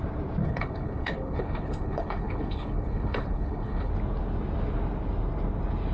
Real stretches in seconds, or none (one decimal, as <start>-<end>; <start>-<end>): 0.0-0.4; 3.9-5.9